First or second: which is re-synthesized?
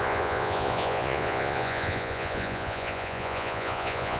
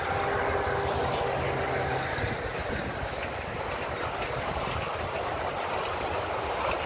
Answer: first